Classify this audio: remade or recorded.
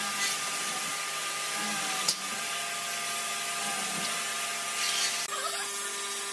recorded